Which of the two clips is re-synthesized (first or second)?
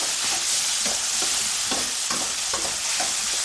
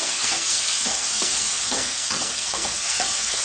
second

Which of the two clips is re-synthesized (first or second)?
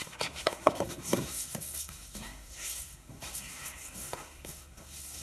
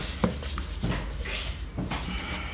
first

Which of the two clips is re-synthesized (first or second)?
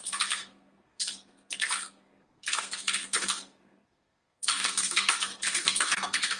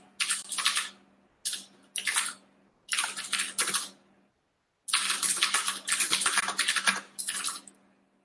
first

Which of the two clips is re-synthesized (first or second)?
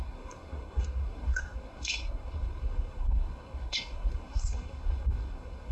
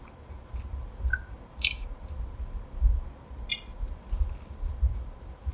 first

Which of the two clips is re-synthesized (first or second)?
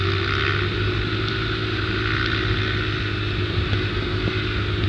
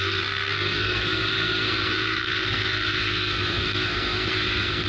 second